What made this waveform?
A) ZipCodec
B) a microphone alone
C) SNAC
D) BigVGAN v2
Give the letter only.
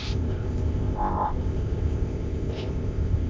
A